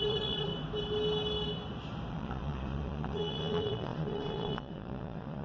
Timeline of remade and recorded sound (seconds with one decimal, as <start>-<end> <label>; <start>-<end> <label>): 0.0-0.5 remade; 0.5-2.1 recorded; 2.1-5.4 remade